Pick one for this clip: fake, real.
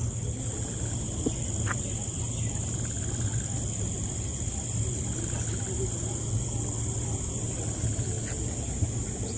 real